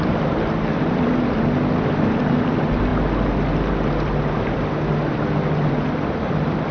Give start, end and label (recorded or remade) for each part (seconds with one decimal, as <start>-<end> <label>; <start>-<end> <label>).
0.0-2.9 remade; 2.9-5.7 recorded; 5.7-6.7 remade